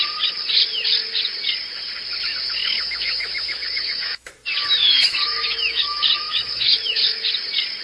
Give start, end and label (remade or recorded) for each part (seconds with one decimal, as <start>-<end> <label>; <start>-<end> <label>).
0.0-2.6 recorded; 2.6-4.3 remade; 4.3-4.8 recorded; 4.8-7.2 remade; 7.2-7.8 recorded